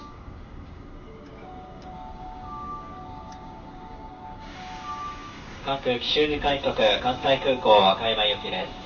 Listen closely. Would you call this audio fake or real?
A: fake